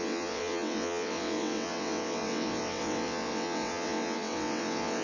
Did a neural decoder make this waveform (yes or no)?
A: yes